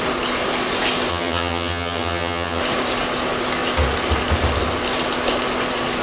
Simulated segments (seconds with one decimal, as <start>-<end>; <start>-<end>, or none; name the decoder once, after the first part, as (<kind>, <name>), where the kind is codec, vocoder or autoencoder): 1.1-2.6 (vocoder, HiFi-GAN)